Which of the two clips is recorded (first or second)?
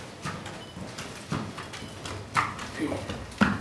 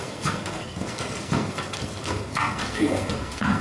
first